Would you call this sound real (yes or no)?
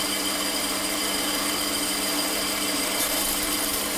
no